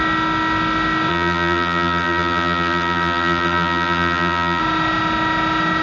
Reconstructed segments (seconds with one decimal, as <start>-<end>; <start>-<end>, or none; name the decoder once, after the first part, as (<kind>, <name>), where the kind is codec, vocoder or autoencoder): 1.1-4.6 (vocoder, BigVGAN v2)